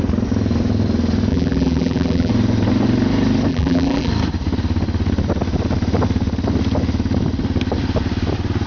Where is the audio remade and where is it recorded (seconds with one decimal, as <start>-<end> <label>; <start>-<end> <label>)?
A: 0.0-1.3 recorded; 1.3-2.3 remade; 2.3-3.5 recorded; 3.5-4.1 remade; 4.1-8.7 recorded